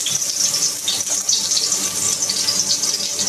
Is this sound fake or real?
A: real